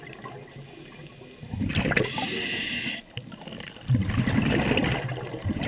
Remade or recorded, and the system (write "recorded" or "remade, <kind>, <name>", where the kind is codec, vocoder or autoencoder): recorded